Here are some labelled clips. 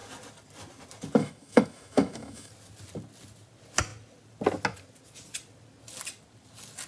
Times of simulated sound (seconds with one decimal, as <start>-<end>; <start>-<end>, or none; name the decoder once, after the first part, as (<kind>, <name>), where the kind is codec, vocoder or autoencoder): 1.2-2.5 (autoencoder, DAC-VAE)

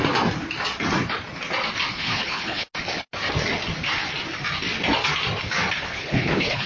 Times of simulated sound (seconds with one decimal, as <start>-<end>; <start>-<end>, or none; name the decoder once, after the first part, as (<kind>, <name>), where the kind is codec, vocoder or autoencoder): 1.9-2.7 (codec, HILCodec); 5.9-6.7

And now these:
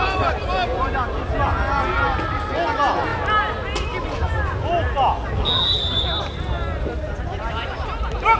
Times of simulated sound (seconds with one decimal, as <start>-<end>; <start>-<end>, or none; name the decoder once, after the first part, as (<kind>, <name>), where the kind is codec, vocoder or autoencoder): none

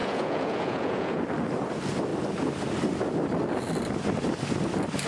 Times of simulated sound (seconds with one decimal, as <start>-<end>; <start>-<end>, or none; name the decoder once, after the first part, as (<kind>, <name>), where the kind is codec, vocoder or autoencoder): 0.0-1.2 (vocoder, Vocos)